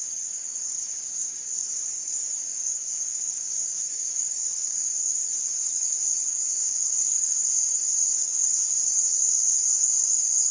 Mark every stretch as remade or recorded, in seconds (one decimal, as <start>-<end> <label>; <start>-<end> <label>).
0.0-10.5 remade

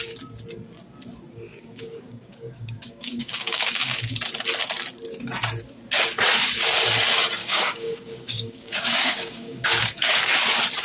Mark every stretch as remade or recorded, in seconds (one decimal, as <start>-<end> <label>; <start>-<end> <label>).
0.0-1.3 recorded; 1.3-4.1 remade; 4.1-7.4 recorded; 7.4-10.4 remade; 10.4-10.8 recorded

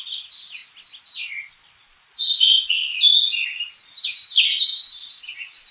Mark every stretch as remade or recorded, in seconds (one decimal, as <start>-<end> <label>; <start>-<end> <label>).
0.0-5.7 recorded

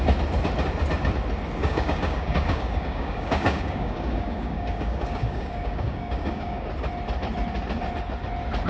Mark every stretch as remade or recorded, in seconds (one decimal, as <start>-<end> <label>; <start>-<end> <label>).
0.0-1.6 recorded; 1.6-6.7 remade; 6.7-8.7 recorded

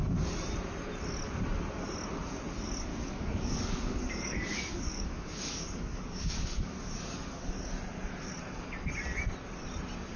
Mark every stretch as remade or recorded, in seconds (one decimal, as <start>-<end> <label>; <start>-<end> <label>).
0.0-2.9 recorded; 2.9-7.5 remade; 7.5-10.2 recorded

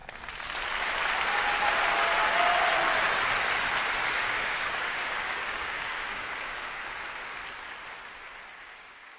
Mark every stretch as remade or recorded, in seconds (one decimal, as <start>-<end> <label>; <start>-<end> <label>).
0.0-4.1 recorded; 4.1-6.8 remade; 6.8-8.6 recorded; 8.6-9.2 remade

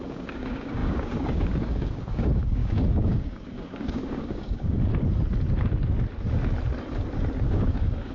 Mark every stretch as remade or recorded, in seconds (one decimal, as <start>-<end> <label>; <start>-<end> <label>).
0.0-4.9 remade; 4.9-7.4 recorded; 7.4-8.1 remade

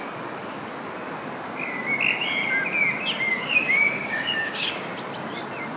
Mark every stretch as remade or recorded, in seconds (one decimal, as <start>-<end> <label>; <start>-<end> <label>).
0.0-3.3 recorded; 3.3-4.7 remade; 4.7-5.8 recorded